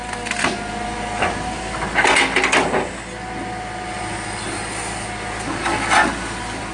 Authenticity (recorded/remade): recorded